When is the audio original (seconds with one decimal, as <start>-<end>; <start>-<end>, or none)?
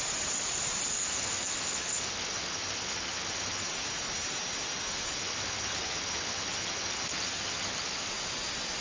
0.0-1.0; 3.7-5.2; 8.1-8.8